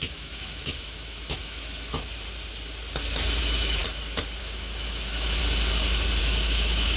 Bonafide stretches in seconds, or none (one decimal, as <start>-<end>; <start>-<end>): 2.0-3.4; 3.8-4.4; 5.4-6.2